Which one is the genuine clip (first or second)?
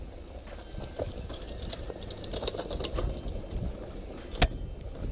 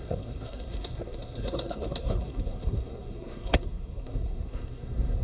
first